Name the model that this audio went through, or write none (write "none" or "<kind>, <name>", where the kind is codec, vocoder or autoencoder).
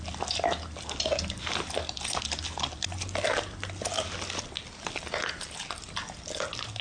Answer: none